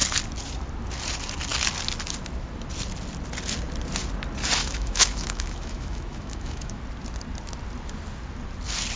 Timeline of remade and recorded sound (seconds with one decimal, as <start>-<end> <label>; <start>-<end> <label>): 0.0-4.6 recorded; 4.6-6.8 remade; 6.8-9.0 recorded